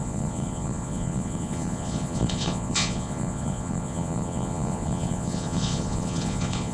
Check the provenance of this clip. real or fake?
fake